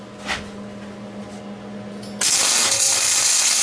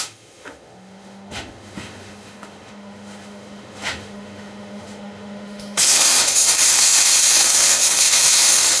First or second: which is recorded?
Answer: first